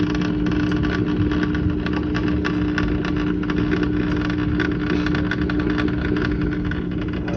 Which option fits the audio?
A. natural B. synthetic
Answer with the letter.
A